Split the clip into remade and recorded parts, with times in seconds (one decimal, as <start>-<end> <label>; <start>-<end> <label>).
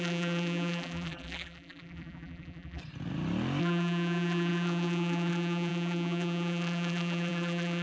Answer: 0.0-2.8 remade; 2.8-3.6 recorded; 3.6-7.8 remade